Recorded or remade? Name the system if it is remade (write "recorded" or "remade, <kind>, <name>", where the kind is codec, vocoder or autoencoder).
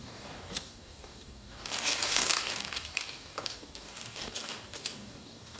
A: remade, codec, DAC